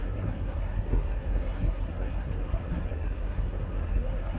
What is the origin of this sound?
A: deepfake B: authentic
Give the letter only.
A